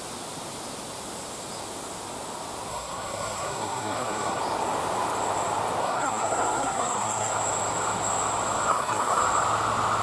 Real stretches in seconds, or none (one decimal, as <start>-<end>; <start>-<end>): 0.0-2.7; 4.4-5.8; 7.3-8.7; 9.2-10.0